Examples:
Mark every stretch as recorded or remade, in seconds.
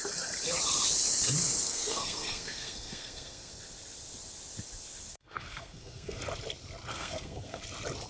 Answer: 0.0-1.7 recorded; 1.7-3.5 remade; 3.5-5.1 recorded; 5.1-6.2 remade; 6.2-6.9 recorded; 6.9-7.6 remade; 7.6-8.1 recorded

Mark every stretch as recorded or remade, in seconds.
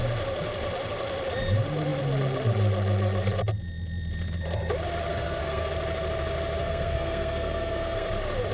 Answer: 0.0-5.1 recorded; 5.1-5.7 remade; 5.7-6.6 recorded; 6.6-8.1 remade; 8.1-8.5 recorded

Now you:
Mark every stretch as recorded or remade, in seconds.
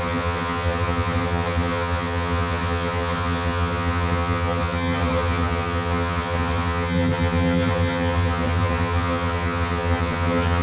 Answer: 0.0-10.6 remade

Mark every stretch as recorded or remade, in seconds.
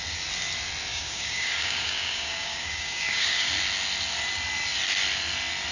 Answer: 0.0-0.9 recorded; 0.9-3.5 remade; 3.5-5.7 recorded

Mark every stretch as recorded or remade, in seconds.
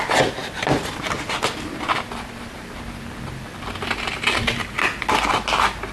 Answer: 0.0-5.9 recorded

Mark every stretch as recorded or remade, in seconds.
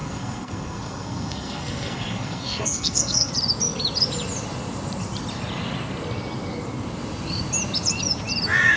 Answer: 0.0-3.3 remade; 3.3-8.8 recorded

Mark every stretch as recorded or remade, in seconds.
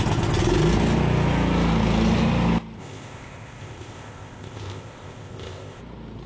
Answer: 0.0-2.8 recorded; 2.8-5.8 remade; 5.8-6.3 recorded